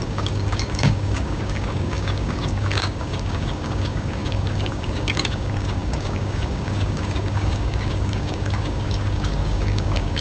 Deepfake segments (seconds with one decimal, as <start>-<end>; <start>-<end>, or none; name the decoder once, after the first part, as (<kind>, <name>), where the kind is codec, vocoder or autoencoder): 0.0-10.2 (codec, DAC)

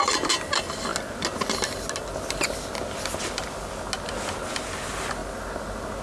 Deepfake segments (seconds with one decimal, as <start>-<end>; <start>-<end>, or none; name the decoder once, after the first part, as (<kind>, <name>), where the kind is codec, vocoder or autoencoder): none

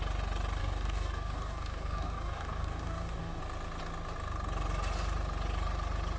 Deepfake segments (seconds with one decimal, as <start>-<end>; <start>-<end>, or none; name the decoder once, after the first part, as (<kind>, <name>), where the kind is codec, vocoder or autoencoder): 0.6-3.4 (codec, DAC)

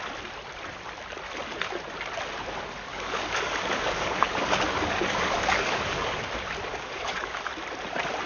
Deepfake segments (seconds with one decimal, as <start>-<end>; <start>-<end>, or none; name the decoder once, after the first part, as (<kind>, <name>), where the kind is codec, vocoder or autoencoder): 2.9-6.2 (codec, DAC); 6.7-7.5

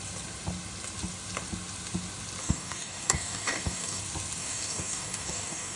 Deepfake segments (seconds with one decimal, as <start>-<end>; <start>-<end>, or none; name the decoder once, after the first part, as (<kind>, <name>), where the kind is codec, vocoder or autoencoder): 2.4-4.0 (codec, DAC); 4.4-5.8